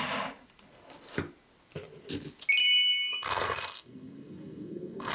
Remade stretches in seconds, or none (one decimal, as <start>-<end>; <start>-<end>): 2.6-5.1